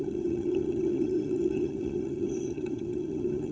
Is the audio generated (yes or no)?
yes